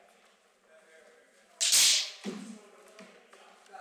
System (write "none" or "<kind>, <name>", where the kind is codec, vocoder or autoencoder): none